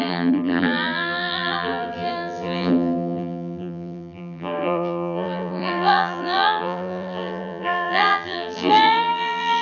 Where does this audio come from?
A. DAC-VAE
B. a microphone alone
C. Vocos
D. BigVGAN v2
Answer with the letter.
D